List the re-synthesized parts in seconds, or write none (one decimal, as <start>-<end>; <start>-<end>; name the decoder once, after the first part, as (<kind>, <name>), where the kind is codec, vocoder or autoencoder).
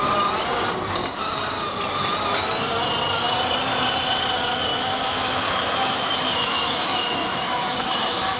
4.7-8.4 (autoencoder, DAC-VAE)